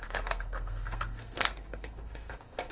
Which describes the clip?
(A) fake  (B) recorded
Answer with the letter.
A